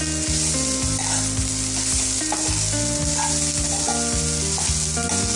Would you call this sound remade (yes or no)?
no